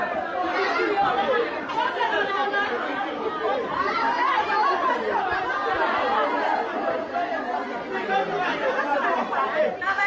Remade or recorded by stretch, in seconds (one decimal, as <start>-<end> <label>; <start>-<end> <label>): 0.0-2.4 recorded; 2.4-5.4 remade; 5.4-8.9 recorded; 8.9-9.6 remade; 9.6-10.1 recorded